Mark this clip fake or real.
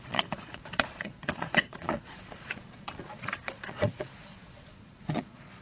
fake